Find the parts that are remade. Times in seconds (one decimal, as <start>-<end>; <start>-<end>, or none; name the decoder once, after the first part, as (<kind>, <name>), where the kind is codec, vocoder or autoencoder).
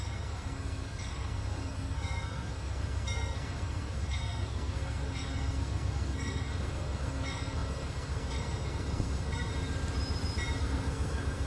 0.0-9.5 (codec, SNAC); 10.6-11.5